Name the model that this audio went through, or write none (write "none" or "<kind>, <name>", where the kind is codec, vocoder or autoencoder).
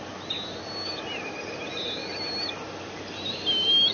none